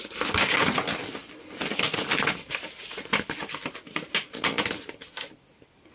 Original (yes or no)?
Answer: yes